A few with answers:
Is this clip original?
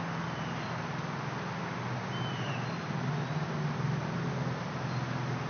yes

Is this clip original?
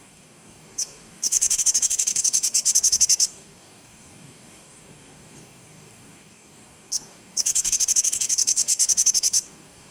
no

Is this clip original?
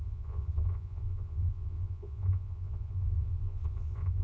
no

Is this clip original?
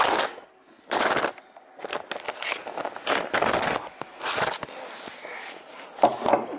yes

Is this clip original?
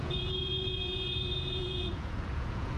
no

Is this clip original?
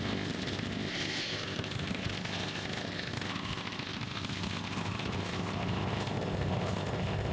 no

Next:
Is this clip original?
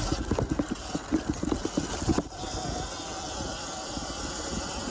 yes